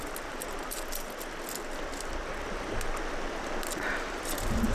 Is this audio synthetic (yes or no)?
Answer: no